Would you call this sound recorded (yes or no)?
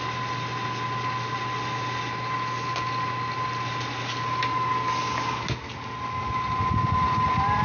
yes